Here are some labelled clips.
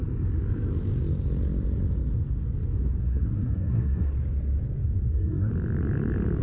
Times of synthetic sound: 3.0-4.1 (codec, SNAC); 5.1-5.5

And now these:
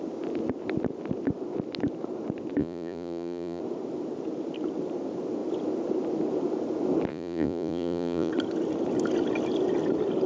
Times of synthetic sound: 2.6-3.6 (vocoder, Vocos); 7.1-8.3

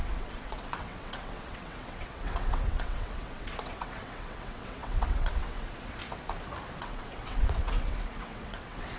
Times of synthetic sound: 0.0-6.0 (vocoder, WaveNeXt); 6.8-9.0

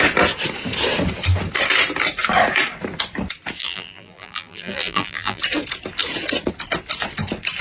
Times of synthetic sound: 3.6-5.4 (vocoder, BigVGAN v2)

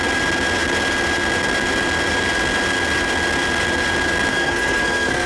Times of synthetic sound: 4.3-5.3 (codec, SNAC)